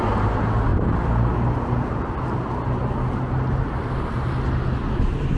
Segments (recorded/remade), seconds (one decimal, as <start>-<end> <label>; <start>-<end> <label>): 0.0-5.4 recorded